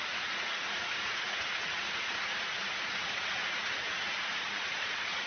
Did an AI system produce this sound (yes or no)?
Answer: yes